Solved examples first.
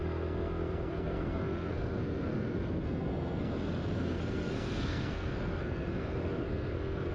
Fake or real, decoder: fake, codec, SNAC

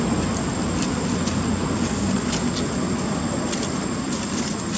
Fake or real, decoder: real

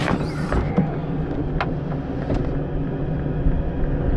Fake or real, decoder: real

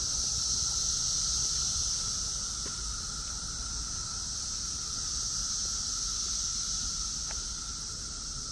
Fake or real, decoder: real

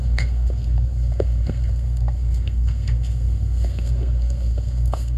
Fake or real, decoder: fake, codec, SNAC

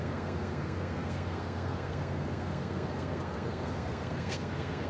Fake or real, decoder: fake, codec, SNAC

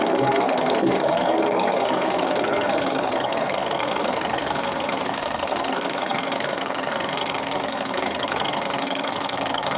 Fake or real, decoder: fake, codec, SNAC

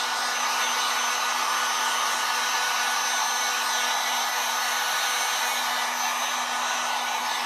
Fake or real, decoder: real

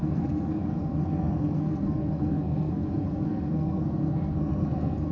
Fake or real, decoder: fake, codec, SNAC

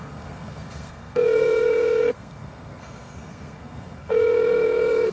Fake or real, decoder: fake, codec, SNAC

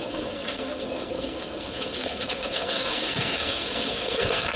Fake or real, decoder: fake, codec, SNAC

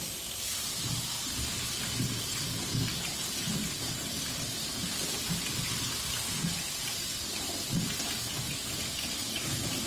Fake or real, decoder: real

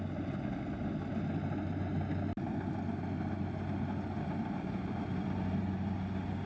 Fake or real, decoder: real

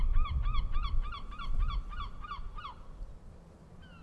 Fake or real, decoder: real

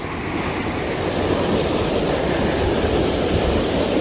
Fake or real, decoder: real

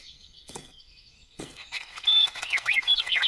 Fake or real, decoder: fake, codec, SNAC